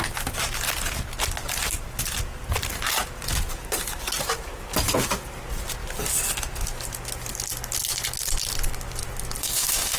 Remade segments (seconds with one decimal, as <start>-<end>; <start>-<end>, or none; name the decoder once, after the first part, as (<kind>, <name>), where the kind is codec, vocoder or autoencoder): 9.4-10.0 (autoencoder, DAC-VAE)